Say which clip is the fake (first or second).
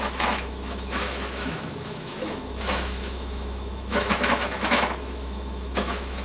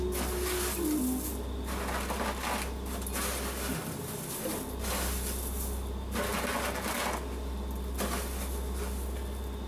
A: first